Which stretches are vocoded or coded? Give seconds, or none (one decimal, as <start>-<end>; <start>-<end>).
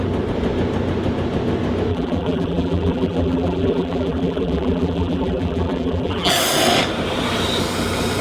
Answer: 1.9-6.3